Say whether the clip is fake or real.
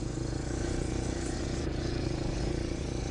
fake